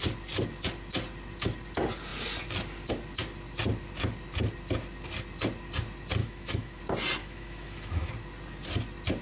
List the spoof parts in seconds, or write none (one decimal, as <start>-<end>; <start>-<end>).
6.2-6.8; 7.2-8.1